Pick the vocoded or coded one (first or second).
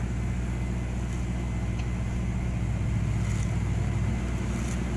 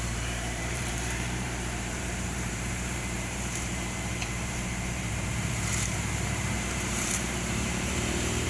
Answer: second